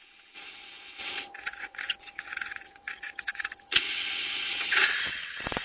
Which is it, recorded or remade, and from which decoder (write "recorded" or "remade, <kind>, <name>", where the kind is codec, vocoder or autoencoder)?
remade, vocoder, WaveNeXt